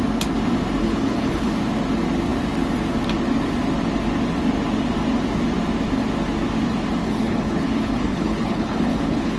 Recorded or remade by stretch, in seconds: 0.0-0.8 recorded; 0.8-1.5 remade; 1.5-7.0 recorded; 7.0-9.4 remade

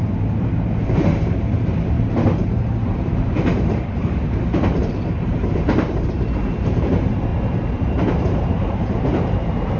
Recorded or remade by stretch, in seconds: 0.0-9.8 remade

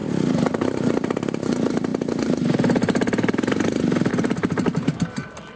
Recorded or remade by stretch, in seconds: 0.0-1.9 remade; 1.9-4.1 recorded; 4.1-5.6 remade

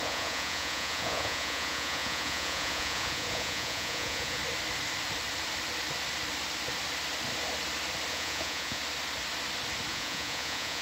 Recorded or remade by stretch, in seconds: 0.0-4.4 remade; 4.4-8.1 recorded; 8.1-8.8 remade; 8.8-9.9 recorded; 9.9-10.8 remade

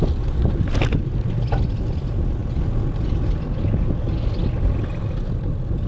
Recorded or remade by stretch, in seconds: 0.0-5.9 recorded

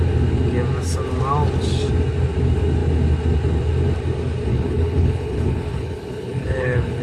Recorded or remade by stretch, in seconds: 0.0-4.5 recorded; 4.5-7.0 remade